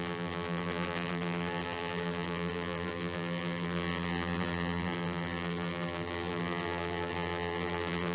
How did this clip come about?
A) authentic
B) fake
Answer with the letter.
B